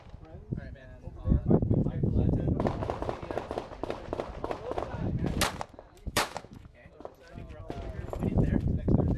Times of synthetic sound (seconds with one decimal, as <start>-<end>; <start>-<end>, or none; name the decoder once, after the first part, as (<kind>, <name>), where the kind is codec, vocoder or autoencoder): 1.8-2.4 (autoencoder, DAC-VAE); 6.0-6.9